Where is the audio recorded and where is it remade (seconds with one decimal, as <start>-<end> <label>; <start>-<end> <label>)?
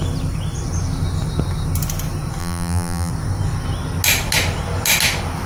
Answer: 0.0-2.4 recorded; 2.4-3.1 remade; 3.1-5.5 recorded